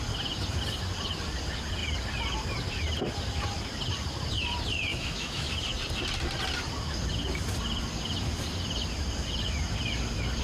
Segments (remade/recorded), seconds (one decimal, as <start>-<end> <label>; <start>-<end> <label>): 0.0-4.9 recorded; 4.9-5.5 remade; 5.5-10.4 recorded